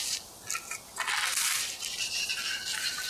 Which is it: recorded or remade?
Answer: recorded